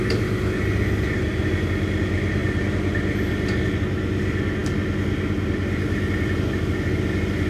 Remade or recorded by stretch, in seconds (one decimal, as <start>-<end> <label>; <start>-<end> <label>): 0.0-7.5 recorded